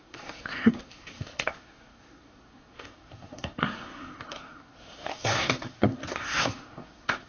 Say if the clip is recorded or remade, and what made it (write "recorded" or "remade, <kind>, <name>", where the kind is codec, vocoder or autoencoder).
remade, codec, SNAC